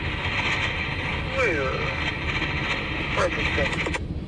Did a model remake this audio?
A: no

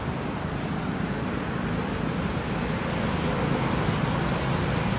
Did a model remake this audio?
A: no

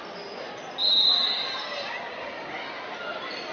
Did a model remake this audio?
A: no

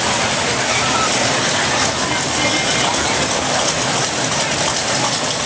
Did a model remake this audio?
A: no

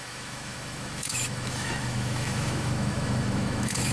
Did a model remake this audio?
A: yes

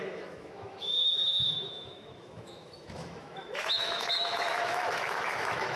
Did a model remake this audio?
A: yes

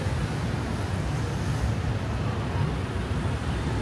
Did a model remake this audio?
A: no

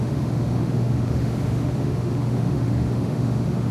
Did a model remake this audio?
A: yes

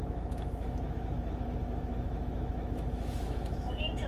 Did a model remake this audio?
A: yes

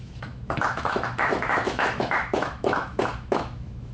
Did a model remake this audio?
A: yes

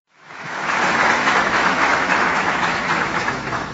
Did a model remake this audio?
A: yes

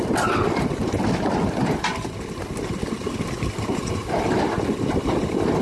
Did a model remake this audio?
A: no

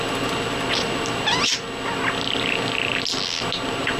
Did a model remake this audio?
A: no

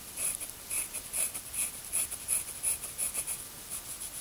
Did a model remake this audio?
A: no